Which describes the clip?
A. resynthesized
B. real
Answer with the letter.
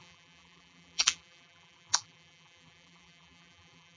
A